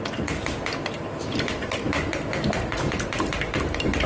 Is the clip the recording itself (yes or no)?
yes